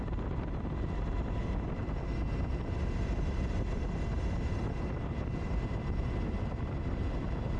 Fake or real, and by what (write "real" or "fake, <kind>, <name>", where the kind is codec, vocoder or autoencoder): fake, vocoder, BigVGAN v2